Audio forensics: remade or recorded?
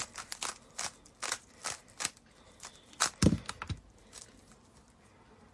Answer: recorded